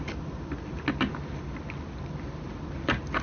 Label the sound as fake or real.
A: real